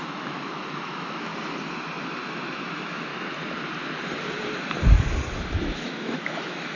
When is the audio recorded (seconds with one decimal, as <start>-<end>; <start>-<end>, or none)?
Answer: 1.3-2.7; 3.1-5.5